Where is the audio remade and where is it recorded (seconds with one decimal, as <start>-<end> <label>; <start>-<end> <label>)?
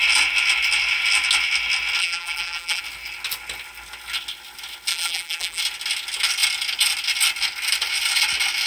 0.0-2.0 recorded; 2.0-2.8 remade; 2.8-4.9 recorded; 4.9-5.6 remade; 5.6-8.7 recorded